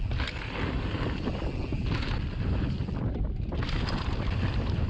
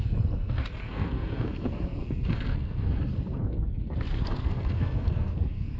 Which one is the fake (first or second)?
second